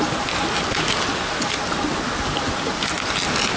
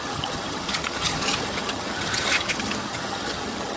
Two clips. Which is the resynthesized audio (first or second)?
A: second